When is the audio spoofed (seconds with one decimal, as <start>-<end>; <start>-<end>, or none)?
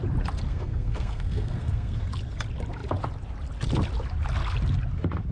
0.5-2.0